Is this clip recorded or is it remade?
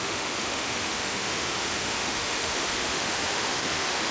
remade